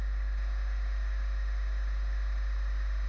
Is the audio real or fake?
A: real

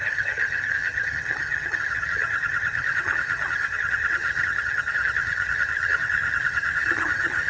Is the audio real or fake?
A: fake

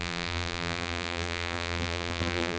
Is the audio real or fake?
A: fake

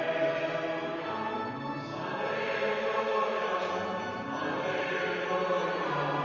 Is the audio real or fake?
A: real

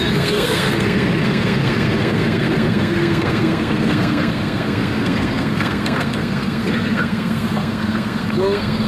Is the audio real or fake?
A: fake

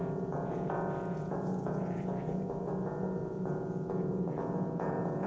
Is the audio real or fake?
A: fake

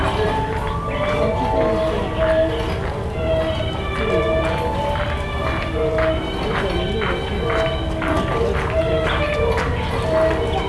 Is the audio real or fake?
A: real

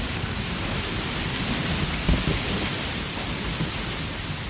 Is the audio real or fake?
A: real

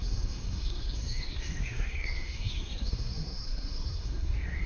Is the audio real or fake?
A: fake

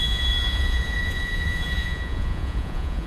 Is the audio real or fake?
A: fake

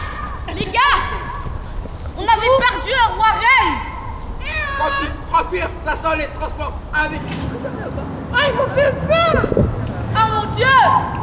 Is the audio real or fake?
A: real